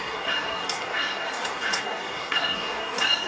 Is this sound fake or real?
fake